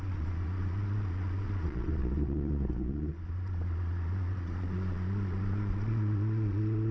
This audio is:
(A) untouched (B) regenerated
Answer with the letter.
B